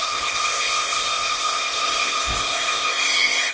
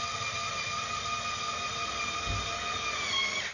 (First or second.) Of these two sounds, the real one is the second